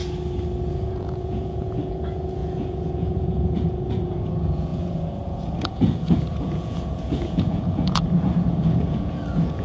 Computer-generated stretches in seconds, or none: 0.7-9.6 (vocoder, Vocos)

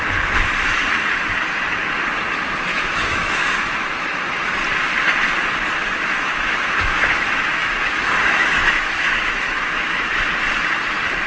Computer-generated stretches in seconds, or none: 2.7-4.5 (autoencoder, DAC-VAE); 5.8-10.2

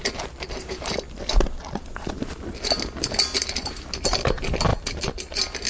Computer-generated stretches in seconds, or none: none

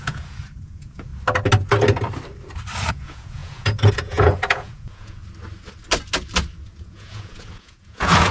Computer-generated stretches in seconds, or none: 0.0-1.1 (vocoder, Vocos); 2.9-5.2; 6.8-8.3

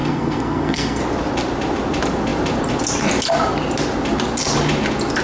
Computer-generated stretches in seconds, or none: 0.0-1.0 (codec, SNAC)